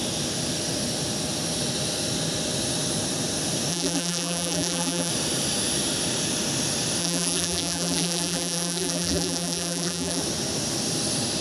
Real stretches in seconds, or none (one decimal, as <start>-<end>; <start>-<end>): 0.0-3.7; 5.1-7.0; 10.2-11.4